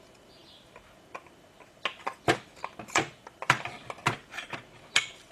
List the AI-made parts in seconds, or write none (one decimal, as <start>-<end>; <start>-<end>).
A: none

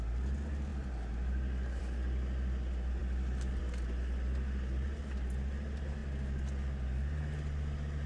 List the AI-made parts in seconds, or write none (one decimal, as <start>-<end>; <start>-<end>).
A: none

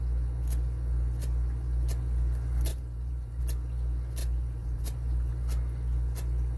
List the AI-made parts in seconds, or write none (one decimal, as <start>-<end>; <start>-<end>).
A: 2.7-3.4; 4.2-5.3

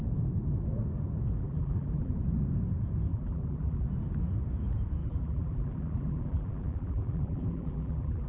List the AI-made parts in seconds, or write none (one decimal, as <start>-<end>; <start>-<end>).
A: 1.4-2.1; 3.1-3.9; 5.0-8.3

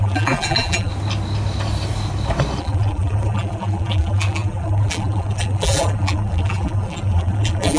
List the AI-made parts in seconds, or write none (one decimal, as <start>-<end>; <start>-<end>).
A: 0.0-0.9; 2.6-7.8

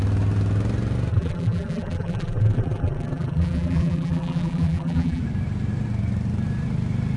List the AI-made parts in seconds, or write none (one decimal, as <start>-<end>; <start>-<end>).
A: 1.1-5.2